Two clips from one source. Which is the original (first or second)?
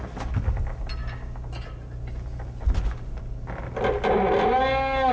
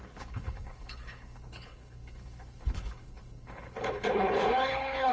first